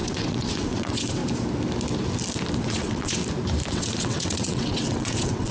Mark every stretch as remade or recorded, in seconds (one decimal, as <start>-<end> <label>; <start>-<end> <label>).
0.0-1.2 remade; 1.2-2.6 recorded; 2.6-3.2 remade; 3.2-3.7 recorded; 3.7-5.5 remade